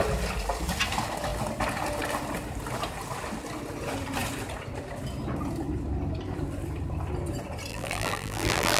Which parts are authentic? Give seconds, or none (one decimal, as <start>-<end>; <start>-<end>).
0.0-7.7